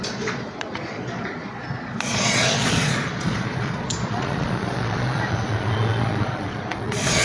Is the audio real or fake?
fake